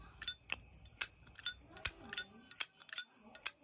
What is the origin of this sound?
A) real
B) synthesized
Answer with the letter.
A